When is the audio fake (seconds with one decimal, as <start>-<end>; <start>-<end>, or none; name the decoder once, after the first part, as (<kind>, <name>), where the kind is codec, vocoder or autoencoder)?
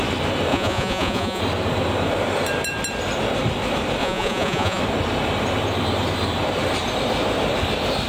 0.5-1.4 (vocoder, Vocos); 4.0-4.8